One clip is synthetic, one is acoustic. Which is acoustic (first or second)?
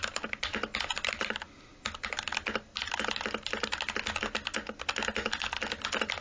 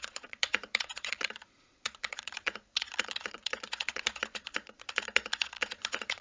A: first